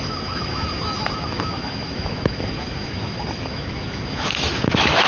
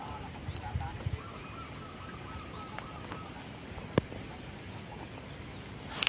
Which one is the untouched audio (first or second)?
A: second